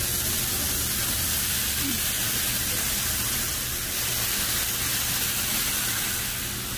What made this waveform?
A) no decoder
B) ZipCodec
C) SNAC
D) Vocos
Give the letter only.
A